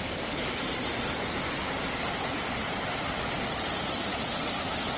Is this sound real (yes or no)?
yes